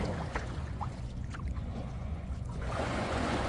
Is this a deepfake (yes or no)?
yes